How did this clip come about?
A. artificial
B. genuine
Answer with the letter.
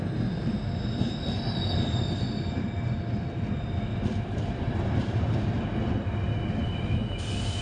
B